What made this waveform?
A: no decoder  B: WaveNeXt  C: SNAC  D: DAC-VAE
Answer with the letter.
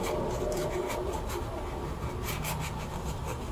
A